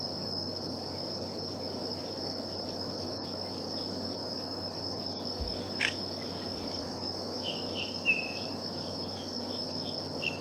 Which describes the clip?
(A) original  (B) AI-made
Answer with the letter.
B